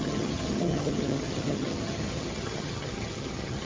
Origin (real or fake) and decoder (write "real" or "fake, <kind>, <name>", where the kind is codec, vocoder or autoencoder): fake, vocoder, HiFi-GAN